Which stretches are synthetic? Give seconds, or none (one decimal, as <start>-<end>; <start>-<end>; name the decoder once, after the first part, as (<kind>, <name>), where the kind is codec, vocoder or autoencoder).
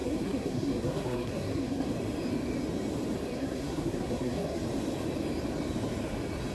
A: 0.0-1.9 (codec, SNAC); 3.2-4.6